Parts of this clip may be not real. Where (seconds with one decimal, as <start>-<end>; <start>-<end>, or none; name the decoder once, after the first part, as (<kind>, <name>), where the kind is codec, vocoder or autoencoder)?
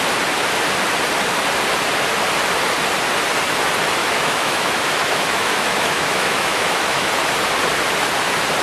4.0-7.1 (autoencoder, DAC-VAE)